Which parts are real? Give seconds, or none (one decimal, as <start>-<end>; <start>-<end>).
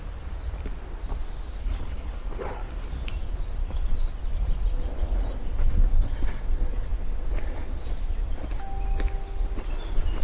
0.0-1.6; 2.9-10.2